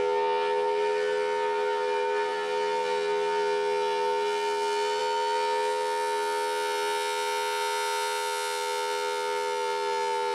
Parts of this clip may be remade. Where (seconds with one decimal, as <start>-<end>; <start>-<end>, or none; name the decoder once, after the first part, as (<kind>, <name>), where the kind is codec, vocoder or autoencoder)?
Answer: none